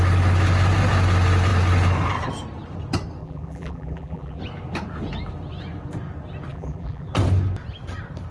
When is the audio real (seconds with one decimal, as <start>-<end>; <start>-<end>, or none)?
0.0-3.2; 4.4-6.5; 7.1-8.3